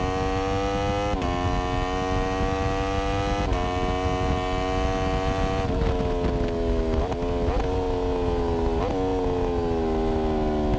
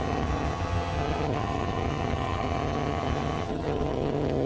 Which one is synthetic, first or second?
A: second